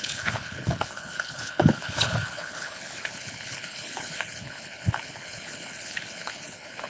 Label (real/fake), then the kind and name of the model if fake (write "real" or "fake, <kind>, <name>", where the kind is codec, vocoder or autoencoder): fake, codec, HILCodec